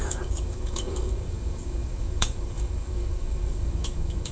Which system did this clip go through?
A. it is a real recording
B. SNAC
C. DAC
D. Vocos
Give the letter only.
C